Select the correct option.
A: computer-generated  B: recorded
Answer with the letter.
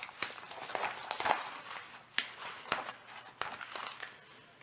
B